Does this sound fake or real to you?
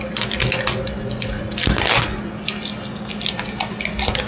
real